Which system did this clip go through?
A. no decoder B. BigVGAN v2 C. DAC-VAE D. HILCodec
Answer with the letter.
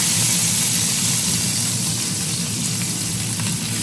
B